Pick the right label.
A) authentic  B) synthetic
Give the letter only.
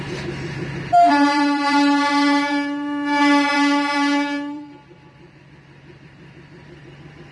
B